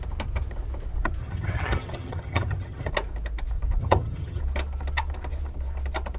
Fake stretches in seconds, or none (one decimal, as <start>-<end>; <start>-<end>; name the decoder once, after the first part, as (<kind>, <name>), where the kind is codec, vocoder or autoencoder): 1.2-2.9 (vocoder, HiFi-GAN); 3.8-4.4

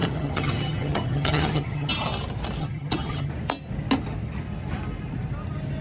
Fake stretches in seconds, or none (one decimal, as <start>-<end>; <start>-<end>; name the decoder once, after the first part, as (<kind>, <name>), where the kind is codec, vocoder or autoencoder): 0.0-1.9 (vocoder, HiFi-GAN); 2.6-3.3

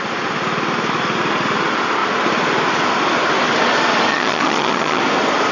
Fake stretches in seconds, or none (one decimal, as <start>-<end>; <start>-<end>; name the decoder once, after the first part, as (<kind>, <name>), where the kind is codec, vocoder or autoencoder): 4.1-5.0 (vocoder, HiFi-GAN)

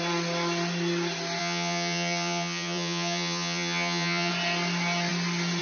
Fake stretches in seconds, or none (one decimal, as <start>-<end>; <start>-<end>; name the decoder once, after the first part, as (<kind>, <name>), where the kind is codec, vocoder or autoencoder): 1.4-4.3 (vocoder, HiFi-GAN)

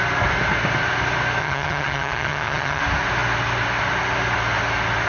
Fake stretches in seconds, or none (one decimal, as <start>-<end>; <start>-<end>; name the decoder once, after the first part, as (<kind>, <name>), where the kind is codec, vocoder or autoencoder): 1.4-2.8 (vocoder, HiFi-GAN)

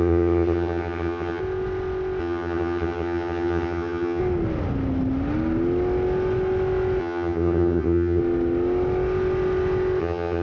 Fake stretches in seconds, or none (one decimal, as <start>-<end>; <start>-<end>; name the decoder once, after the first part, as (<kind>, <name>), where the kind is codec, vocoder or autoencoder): 0.0-1.4 (vocoder, HiFi-GAN); 2.2-4.2; 7.0-8.2; 10.0-10.4